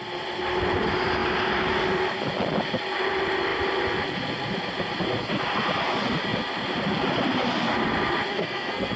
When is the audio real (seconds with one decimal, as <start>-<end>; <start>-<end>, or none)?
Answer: 0.0-8.3